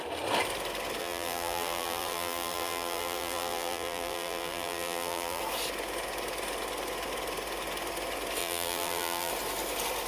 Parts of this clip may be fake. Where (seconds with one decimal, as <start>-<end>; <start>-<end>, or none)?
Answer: 1.0-5.4; 8.4-9.3